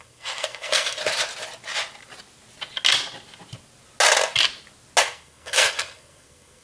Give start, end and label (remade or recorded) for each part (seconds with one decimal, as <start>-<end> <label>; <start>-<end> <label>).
0.0-1.0 remade; 1.0-5.0 recorded; 5.0-6.6 remade